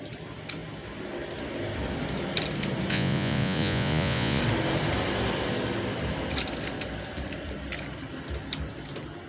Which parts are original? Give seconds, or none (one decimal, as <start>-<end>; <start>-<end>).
0.0-2.9; 4.4-9.3